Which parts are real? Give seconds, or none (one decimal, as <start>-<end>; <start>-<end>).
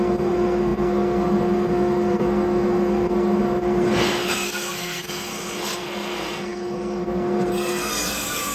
none